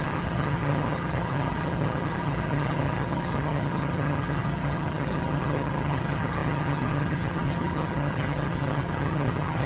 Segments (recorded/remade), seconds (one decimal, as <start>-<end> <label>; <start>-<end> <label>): 0.0-9.7 remade